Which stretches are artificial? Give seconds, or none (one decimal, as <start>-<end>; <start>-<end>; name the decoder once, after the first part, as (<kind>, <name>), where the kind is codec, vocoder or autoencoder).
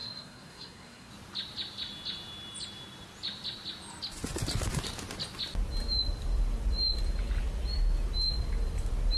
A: 0.0-1.1 (codec, SNAC)